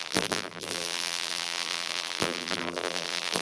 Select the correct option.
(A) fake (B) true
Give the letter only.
A